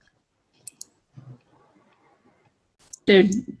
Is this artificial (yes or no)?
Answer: no